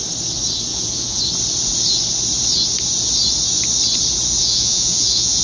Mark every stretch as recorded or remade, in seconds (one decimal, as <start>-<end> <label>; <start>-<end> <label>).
0.0-0.7 recorded; 0.7-1.2 remade; 1.2-4.4 recorded; 4.4-5.4 remade